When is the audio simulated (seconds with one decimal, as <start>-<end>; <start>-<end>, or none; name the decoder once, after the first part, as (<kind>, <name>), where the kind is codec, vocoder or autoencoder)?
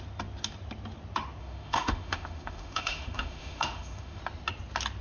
1.4-4.2 (autoencoder, DAC-VAE)